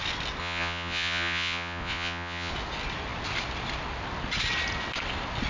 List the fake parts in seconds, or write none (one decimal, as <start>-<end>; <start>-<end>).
0.4-2.5